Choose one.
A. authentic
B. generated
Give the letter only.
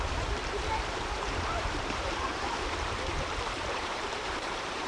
B